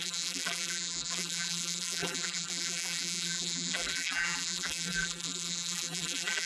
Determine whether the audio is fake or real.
fake